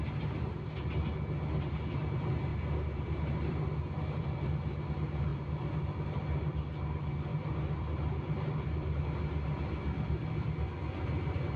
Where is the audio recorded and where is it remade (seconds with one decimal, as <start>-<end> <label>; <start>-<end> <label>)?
0.0-2.5 recorded; 2.5-4.3 remade; 4.3-5.3 recorded; 5.3-6.0 remade; 6.0-7.3 recorded; 7.3-9.0 remade; 9.0-11.6 recorded